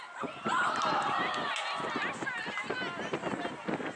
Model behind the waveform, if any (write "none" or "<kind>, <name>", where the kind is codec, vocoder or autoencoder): none